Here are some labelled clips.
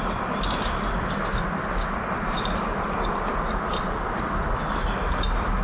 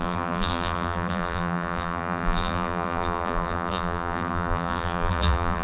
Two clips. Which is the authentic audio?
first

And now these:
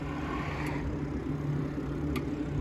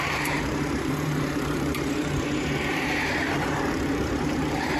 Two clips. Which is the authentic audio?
first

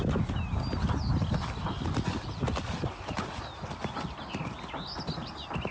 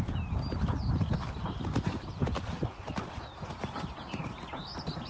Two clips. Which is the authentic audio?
first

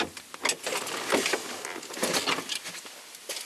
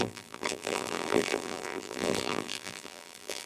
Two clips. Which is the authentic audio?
first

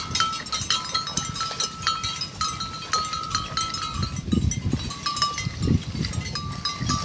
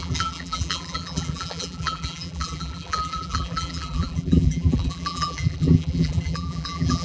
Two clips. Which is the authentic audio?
first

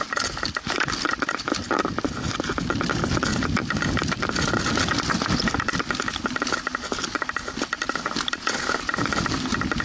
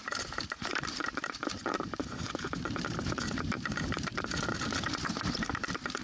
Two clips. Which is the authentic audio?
first